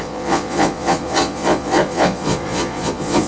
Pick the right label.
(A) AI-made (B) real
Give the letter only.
A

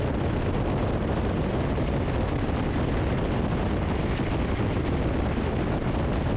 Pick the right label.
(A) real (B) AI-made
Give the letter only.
A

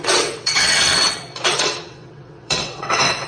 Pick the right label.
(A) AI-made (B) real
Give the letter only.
A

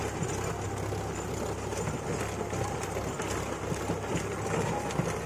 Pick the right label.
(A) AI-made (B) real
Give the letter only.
B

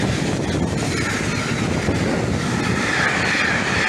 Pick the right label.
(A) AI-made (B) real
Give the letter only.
B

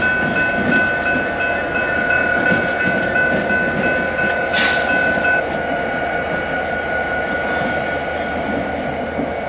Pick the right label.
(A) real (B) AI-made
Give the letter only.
A